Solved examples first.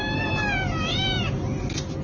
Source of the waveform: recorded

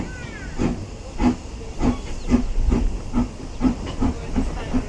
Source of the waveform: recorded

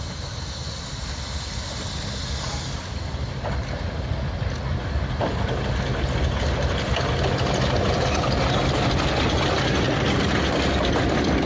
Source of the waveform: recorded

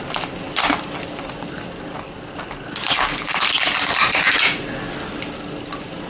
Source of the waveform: recorded